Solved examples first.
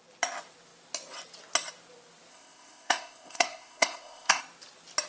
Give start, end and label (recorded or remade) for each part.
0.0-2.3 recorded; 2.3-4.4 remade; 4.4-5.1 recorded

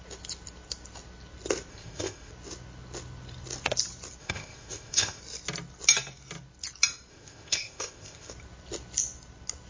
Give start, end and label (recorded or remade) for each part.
0.0-1.7 recorded; 1.7-2.3 remade; 2.3-4.2 recorded; 4.2-5.2 remade; 5.2-7.1 recorded; 7.1-8.3 remade; 8.3-9.7 recorded

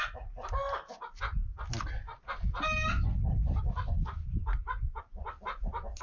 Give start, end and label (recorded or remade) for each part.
0.0-6.0 recorded

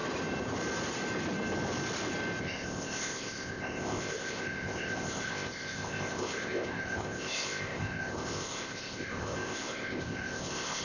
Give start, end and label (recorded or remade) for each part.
0.0-2.4 recorded; 2.4-10.8 remade

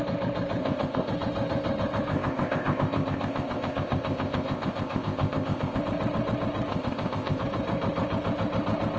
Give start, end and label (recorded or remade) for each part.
0.0-0.6 recorded; 0.6-1.1 remade; 1.1-2.1 recorded; 2.1-5.8 remade; 5.8-6.7 recorded; 6.7-7.4 remade; 7.4-9.0 recorded

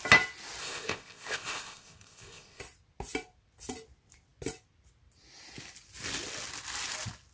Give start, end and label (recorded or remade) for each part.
0.0-0.6 recorded; 0.6-2.6 remade; 2.6-7.3 recorded